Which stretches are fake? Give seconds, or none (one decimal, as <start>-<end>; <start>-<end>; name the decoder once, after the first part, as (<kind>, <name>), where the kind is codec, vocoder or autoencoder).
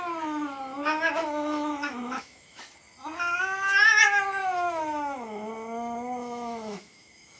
1.2-2.6 (autoencoder, DAC-VAE); 4.4-7.4